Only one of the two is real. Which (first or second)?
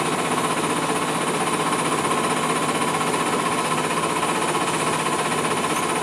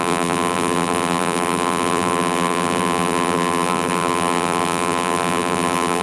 first